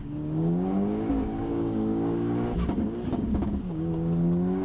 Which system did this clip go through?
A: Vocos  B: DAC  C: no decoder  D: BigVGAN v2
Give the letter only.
B